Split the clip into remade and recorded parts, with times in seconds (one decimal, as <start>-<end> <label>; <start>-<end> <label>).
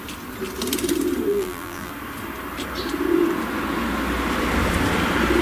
0.0-1.3 recorded; 1.3-1.9 remade; 1.9-5.4 recorded